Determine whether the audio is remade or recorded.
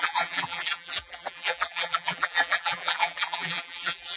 remade